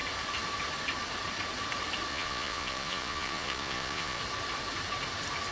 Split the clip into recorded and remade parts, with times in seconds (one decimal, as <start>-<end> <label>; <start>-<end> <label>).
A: 0.0-2.1 recorded; 2.1-4.2 remade; 4.2-5.5 recorded